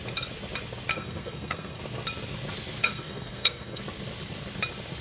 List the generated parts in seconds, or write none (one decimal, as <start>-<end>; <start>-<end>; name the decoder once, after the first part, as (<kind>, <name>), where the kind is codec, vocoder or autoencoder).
0.9-1.8 (codec, SNAC); 2.8-3.8